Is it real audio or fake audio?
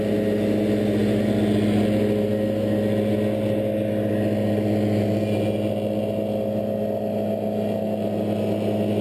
real